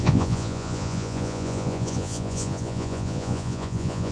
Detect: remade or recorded remade